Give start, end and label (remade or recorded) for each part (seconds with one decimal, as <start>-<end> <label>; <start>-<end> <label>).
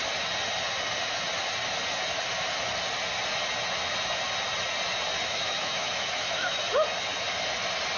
0.0-5.3 recorded; 5.3-6.7 remade; 6.7-8.0 recorded